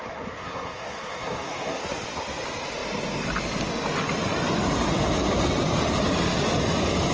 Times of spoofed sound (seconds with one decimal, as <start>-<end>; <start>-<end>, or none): 0.0-1.8